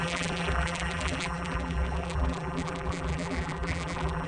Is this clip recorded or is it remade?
remade